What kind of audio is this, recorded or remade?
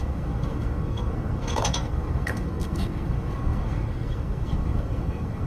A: remade